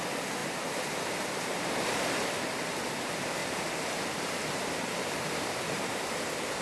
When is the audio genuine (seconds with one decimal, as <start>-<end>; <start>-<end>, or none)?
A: 0.0-0.4; 2.0-3.4; 6.1-6.6